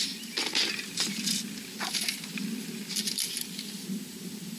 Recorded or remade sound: recorded